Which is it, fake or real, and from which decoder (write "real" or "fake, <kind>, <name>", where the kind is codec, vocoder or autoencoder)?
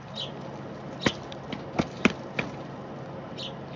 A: real